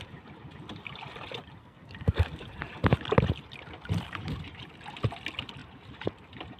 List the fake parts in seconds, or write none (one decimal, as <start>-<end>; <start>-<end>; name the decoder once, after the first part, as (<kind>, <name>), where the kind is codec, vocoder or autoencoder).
1.6-2.4 (codec, SNAC)